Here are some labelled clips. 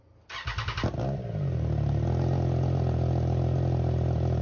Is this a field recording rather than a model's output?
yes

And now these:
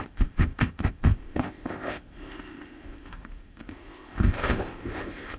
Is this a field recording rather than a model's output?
no